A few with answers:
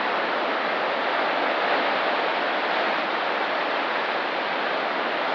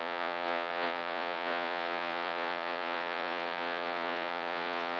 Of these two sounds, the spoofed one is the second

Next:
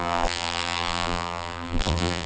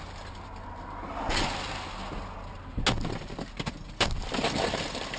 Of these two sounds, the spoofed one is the first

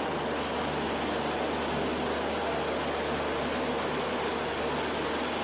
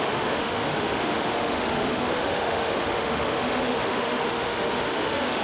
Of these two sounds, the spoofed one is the second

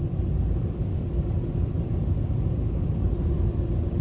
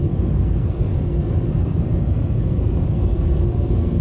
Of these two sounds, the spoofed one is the second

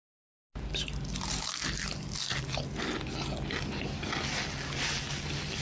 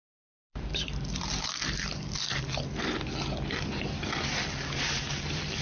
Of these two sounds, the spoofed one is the second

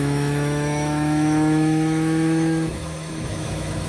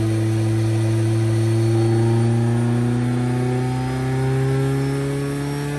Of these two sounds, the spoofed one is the first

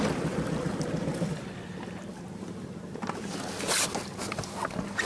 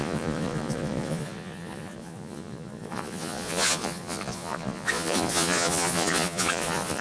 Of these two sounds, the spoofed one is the second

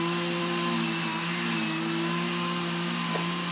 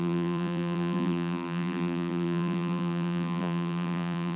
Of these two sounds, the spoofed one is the second